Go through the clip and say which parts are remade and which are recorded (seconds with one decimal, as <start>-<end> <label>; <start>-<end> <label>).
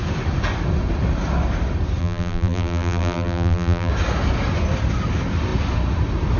0.0-2.0 recorded; 2.0-3.9 remade; 3.9-6.4 recorded